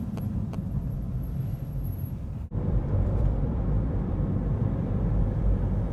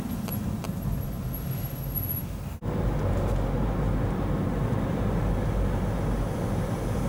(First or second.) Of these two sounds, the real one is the second